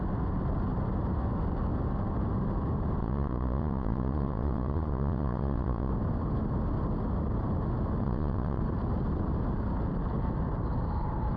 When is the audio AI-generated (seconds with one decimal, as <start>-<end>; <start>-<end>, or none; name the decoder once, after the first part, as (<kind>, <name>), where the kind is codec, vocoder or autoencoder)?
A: 3.0-5.9 (vocoder, Vocos); 8.0-8.6